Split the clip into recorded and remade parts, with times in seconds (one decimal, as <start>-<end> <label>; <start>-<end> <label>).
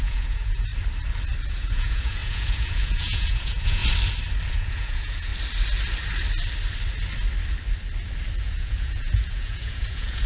0.0-0.7 remade; 0.7-1.5 recorded; 1.5-3.8 remade; 3.8-4.5 recorded; 4.5-5.3 remade; 5.3-8.4 recorded; 8.4-10.3 remade